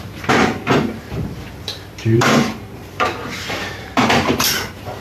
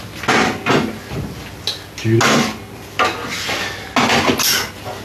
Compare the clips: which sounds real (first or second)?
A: second